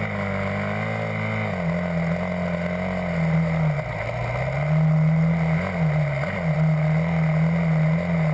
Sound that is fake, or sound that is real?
real